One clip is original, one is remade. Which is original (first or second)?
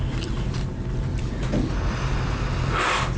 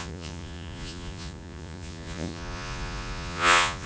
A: first